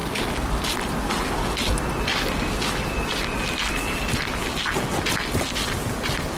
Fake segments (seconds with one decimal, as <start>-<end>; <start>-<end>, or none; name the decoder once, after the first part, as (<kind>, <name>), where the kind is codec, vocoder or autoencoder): none